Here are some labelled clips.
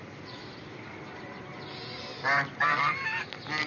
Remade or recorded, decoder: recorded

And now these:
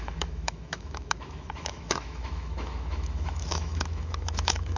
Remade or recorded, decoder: remade, autoencoder, DAC-VAE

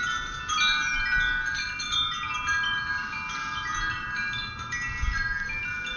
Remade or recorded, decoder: recorded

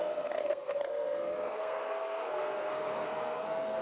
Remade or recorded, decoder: remade, codec, SNAC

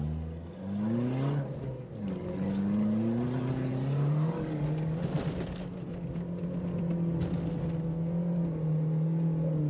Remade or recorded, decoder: recorded